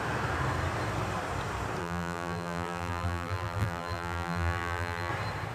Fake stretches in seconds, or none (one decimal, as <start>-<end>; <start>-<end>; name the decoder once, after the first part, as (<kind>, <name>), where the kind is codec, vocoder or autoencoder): 1.8-5.1 (vocoder, BigVGAN v2)